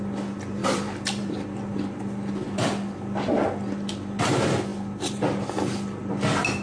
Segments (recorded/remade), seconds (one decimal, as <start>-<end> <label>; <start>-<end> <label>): 0.0-0.6 recorded; 0.6-2.0 remade; 2.0-4.7 recorded; 4.7-5.2 remade; 5.2-6.6 recorded